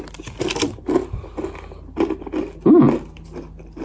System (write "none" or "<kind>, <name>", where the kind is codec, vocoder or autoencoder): none